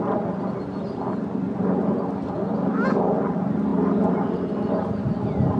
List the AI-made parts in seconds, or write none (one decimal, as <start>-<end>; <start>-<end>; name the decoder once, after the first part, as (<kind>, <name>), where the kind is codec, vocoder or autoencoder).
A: none